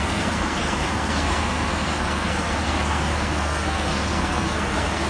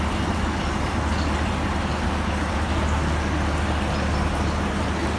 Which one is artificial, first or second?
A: first